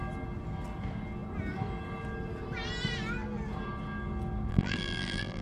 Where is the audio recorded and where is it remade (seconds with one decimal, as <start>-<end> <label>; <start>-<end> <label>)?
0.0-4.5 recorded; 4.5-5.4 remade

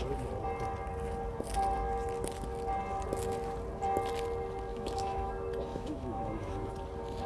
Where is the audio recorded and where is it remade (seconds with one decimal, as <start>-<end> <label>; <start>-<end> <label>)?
0.0-4.7 recorded; 4.7-5.3 remade; 5.3-5.7 recorded; 5.7-6.7 remade; 6.7-7.3 recorded

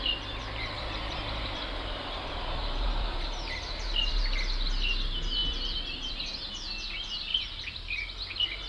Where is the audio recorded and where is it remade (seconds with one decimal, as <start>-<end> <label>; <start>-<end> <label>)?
0.0-0.4 recorded; 0.4-4.2 remade; 4.2-8.7 recorded

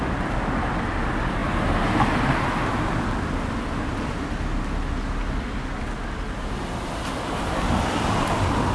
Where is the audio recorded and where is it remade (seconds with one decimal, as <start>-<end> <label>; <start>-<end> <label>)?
0.0-8.7 recorded

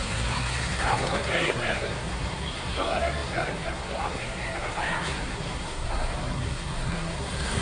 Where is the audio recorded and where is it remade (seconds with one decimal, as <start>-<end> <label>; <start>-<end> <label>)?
0.0-7.6 remade

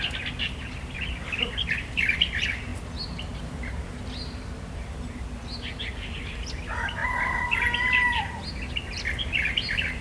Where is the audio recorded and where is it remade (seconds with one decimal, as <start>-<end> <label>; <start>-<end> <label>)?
0.0-10.0 recorded

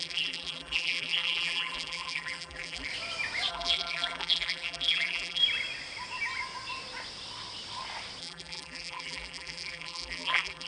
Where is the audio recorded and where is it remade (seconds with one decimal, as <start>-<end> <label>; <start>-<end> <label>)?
0.0-2.9 remade; 2.9-3.5 recorded; 3.5-5.4 remade; 5.4-8.2 recorded; 8.2-10.7 remade

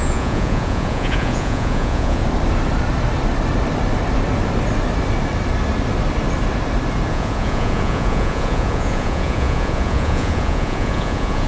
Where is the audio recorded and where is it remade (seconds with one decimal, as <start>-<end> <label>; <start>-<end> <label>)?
0.0-2.2 remade; 2.2-7.1 recorded; 7.1-11.5 remade